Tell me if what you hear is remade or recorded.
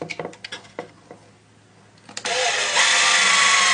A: recorded